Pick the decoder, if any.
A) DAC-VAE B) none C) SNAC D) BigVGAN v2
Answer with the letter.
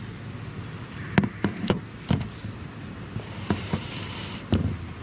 D